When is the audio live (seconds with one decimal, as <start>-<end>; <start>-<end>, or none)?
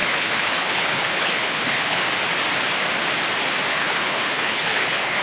2.0-3.7